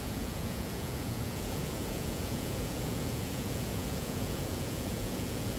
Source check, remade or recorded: remade